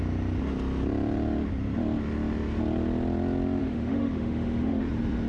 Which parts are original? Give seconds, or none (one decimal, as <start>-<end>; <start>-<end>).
0.0-3.6; 4.8-5.3